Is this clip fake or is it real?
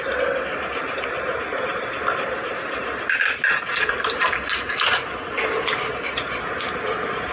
real